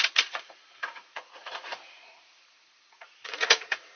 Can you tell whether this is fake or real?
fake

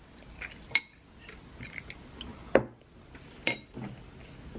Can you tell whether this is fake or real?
real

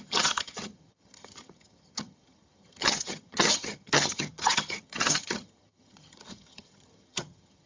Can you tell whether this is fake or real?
fake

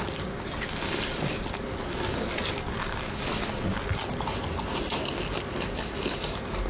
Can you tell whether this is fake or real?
real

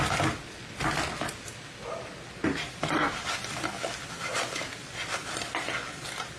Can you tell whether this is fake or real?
real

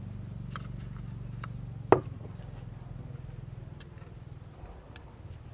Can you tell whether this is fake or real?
real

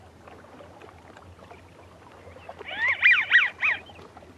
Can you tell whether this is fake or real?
real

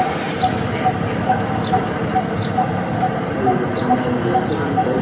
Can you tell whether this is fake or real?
real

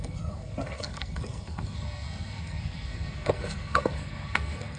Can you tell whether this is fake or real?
fake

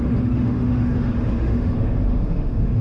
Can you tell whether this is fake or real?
fake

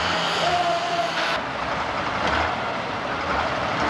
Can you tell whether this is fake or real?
fake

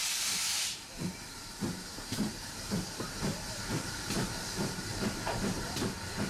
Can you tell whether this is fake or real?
fake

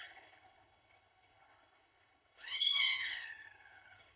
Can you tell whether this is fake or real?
fake